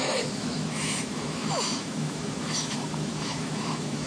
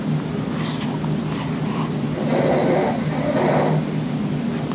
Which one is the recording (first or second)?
second